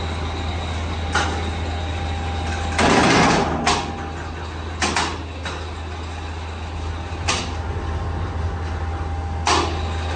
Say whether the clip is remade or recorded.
recorded